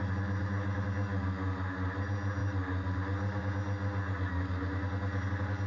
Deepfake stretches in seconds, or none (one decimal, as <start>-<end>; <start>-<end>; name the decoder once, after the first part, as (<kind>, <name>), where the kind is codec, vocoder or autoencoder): none